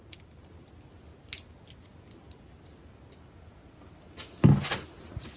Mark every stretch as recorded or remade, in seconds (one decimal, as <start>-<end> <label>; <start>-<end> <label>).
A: 0.0-5.4 recorded